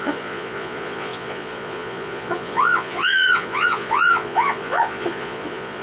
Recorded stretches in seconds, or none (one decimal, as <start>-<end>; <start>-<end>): none